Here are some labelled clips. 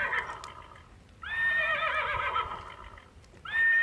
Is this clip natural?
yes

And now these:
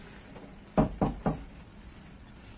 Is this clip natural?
no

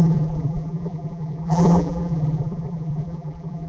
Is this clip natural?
no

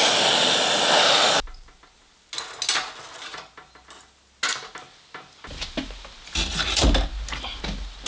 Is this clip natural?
yes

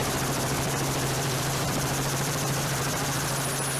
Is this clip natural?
no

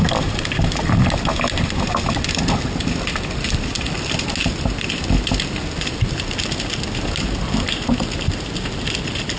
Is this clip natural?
yes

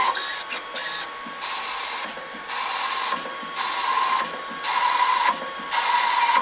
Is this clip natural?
yes